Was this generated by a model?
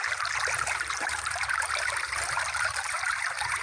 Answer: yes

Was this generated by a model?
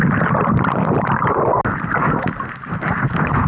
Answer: no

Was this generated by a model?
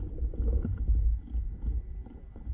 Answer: yes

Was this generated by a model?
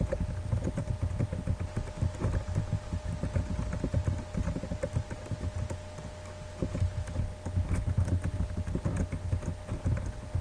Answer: no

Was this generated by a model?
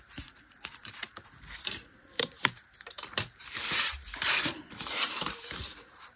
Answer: yes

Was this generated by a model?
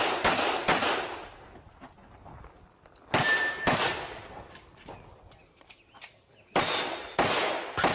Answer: no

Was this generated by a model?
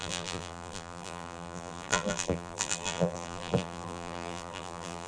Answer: yes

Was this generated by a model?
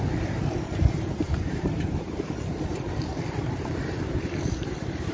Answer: yes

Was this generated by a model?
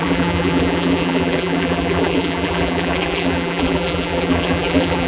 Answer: yes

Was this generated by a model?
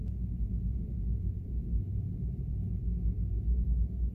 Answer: yes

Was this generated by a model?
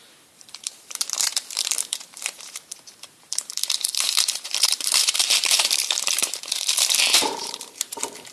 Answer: yes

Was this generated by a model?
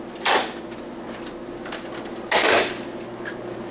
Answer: no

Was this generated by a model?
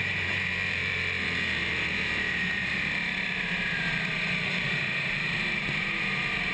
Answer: yes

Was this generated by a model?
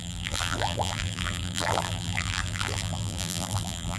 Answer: yes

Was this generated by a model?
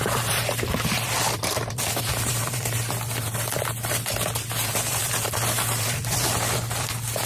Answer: yes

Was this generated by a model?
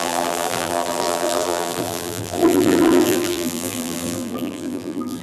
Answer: yes